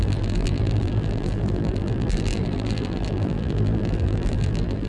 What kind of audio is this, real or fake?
fake